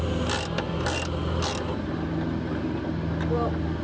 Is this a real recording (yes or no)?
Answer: yes